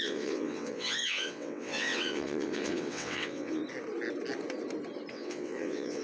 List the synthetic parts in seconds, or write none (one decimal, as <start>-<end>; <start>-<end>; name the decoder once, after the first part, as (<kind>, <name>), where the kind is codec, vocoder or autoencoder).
0.0-3.6 (vocoder, WaveNeXt); 5.1-6.0